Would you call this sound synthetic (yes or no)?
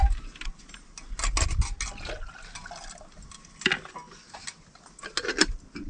no